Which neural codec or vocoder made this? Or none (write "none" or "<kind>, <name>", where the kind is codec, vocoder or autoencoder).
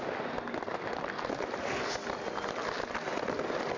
none